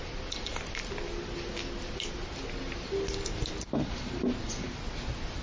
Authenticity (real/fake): real